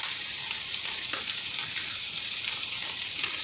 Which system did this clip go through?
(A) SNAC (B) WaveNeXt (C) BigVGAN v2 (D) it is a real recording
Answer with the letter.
C